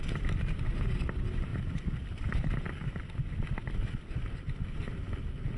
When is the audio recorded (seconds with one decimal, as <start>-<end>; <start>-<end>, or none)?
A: 0.0-5.6

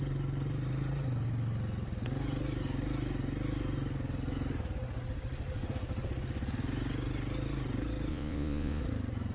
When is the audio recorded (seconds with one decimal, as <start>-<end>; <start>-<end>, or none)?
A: 0.0-8.1; 8.8-9.3

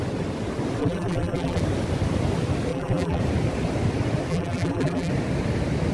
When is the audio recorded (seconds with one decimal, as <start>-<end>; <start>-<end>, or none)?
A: 0.0-0.8; 1.6-2.7; 3.2-4.3; 5.1-5.9

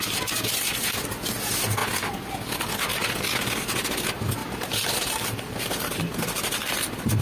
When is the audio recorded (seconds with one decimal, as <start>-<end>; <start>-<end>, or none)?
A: 0.0-4.4; 6.0-7.2

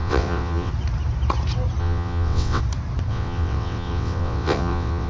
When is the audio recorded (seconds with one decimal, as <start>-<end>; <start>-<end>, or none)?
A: 0.7-1.8; 2.6-3.1